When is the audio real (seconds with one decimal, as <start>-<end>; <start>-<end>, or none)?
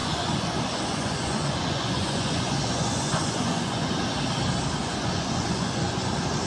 3.9-4.8; 6.1-6.5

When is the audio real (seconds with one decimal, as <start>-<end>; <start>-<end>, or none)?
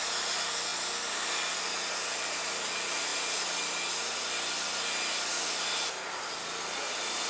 0.0-7.3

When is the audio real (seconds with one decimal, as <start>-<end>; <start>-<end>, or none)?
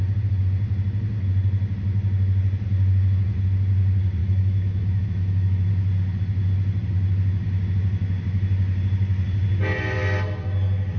0.0-4.2; 5.7-11.0